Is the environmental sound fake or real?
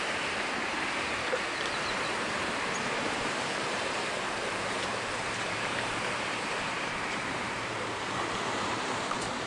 fake